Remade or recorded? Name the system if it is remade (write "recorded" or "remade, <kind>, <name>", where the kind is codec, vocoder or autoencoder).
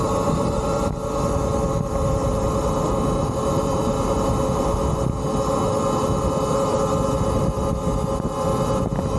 recorded